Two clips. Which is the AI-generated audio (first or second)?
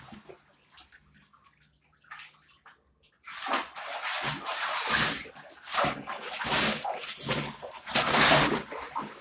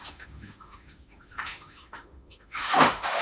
second